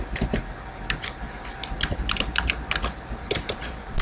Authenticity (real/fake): real